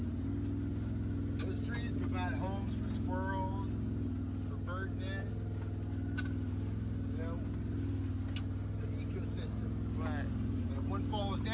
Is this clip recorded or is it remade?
recorded